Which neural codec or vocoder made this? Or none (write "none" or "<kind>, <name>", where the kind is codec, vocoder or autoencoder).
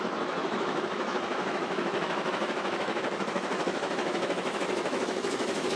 autoencoder, DAC-VAE